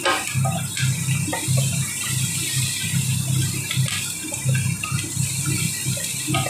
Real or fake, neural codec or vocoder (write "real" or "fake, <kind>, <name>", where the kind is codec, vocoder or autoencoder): real